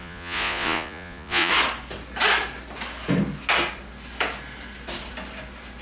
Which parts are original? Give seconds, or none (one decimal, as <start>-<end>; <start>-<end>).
1.5-5.8